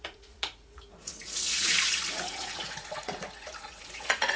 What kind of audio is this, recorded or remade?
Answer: remade